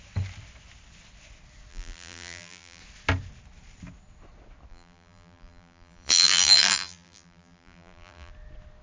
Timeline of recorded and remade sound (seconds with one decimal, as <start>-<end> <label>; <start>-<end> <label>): 0.0-1.7 recorded; 1.7-2.8 remade; 2.8-4.7 recorded; 4.7-8.3 remade; 8.3-8.8 recorded